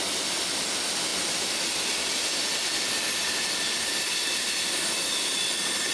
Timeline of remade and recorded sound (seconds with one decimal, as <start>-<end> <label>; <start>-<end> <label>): 0.0-5.9 recorded

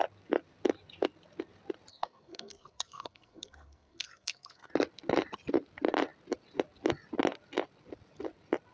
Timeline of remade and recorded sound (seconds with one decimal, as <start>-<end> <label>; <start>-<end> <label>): 0.0-1.9 recorded; 1.9-4.7 remade; 4.7-8.7 recorded

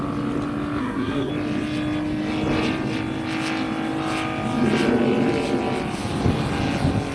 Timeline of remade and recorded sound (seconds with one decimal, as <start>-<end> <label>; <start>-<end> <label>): 0.0-0.8 recorded; 0.8-1.3 remade; 1.3-7.1 recorded

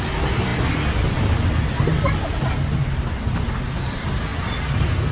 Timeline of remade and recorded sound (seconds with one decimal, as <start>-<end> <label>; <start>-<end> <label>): 0.0-5.1 recorded

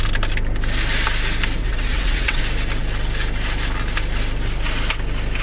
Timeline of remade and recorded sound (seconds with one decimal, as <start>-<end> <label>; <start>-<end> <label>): 0.0-1.6 recorded; 1.6-2.4 remade; 2.4-5.4 recorded

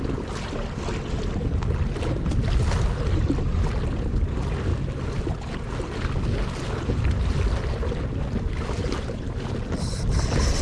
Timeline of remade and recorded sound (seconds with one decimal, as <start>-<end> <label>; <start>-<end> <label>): 0.0-10.6 recorded

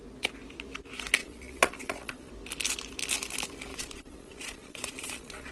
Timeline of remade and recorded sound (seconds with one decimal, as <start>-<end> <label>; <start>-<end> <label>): 0.0-1.2 recorded; 1.2-2.3 remade; 2.3-3.7 recorded; 3.7-5.5 remade

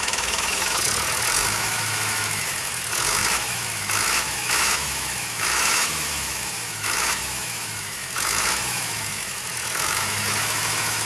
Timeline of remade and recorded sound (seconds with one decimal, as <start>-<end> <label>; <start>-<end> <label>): 0.0-11.1 remade